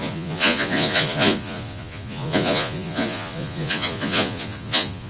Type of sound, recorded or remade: remade